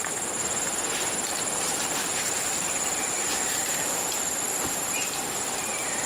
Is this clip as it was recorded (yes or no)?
no